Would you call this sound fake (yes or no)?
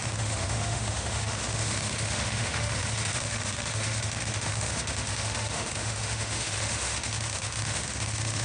yes